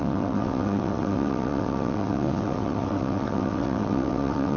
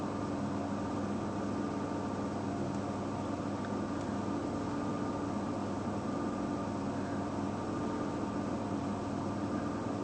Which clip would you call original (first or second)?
second